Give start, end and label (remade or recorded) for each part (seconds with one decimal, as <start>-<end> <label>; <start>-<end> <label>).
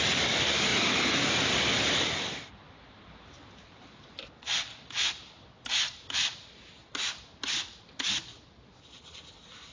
0.0-9.7 recorded